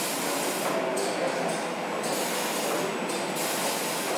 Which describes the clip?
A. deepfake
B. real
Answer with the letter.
B